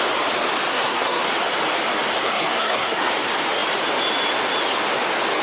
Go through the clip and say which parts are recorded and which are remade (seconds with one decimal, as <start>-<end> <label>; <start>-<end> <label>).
0.0-0.7 recorded; 0.7-1.2 remade; 1.2-2.1 recorded; 2.1-3.1 remade; 3.1-5.4 recorded